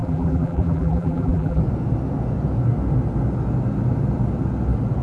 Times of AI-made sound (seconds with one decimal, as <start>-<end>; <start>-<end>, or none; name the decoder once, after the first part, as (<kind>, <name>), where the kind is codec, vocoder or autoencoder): 0.0-1.6 (vocoder, BigVGAN v2)

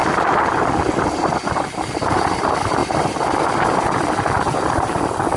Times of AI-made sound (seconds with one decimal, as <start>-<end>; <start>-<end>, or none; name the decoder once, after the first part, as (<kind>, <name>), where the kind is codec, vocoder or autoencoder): none

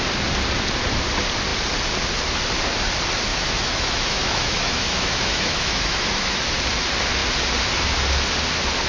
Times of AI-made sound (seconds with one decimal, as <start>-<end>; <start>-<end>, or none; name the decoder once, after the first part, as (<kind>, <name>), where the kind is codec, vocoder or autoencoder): 3.3-6.5 (autoencoder, DAC-VAE)